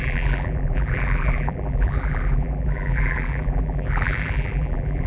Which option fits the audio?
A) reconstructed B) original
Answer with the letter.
A